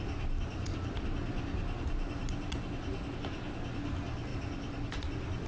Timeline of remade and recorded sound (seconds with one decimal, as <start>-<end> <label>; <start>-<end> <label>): 0.0-5.5 recorded